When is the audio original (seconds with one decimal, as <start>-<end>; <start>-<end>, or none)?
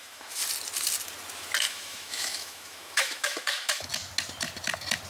0.4-1.6; 3.9-5.1